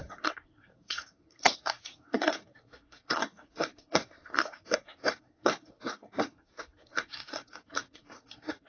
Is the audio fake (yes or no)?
yes